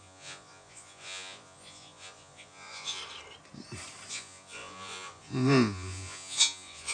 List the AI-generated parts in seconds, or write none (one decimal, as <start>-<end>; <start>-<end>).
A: 0.0-3.0; 4.1-6.9